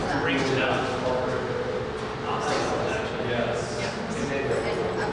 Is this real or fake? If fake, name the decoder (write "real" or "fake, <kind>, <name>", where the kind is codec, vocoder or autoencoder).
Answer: real